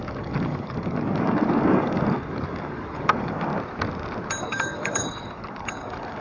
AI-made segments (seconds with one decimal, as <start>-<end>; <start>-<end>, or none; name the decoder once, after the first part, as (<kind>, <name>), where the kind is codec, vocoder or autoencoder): 0.0-3.5 (codec, DAC); 4.4-6.2